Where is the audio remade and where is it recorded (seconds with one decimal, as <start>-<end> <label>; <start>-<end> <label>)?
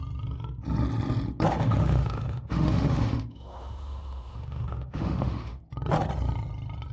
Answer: 0.0-1.5 recorded; 1.5-5.6 remade; 5.6-6.9 recorded